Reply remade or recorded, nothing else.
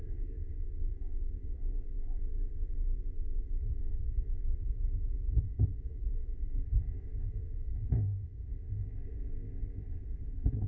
remade